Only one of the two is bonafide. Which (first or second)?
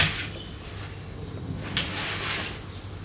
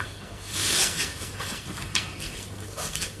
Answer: first